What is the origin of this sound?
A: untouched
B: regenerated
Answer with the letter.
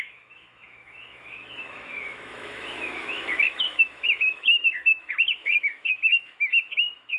B